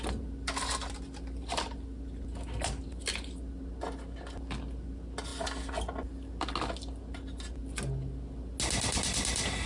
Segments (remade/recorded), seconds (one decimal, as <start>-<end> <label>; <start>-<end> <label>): 0.0-9.7 recorded

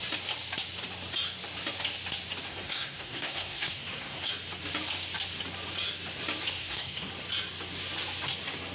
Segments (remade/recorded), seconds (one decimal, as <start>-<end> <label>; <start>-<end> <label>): 0.0-2.5 recorded; 2.5-4.3 remade; 4.3-6.6 recorded; 6.6-7.1 remade; 7.1-8.7 recorded

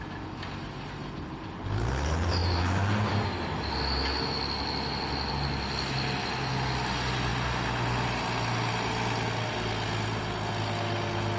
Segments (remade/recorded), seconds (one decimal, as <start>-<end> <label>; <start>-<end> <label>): 0.0-11.4 recorded

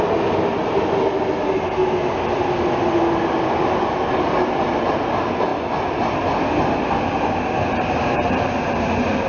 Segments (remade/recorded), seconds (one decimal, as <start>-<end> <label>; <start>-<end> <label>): 0.0-9.3 recorded

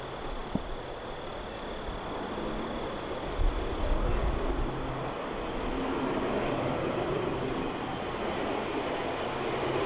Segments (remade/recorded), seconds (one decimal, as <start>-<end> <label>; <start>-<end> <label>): 0.0-9.9 recorded